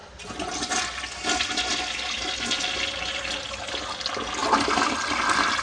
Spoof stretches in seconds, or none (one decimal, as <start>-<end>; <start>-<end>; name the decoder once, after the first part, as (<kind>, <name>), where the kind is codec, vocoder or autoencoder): none